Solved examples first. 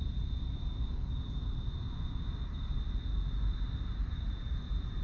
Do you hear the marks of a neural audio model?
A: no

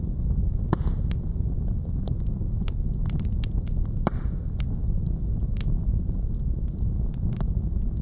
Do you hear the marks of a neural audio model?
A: no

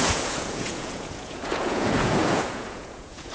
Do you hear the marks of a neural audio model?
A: yes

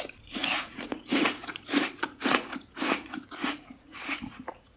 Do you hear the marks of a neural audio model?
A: yes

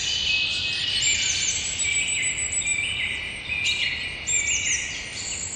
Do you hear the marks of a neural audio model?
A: no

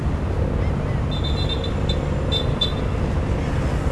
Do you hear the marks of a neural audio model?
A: no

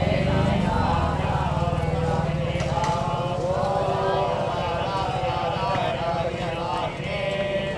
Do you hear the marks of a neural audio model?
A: no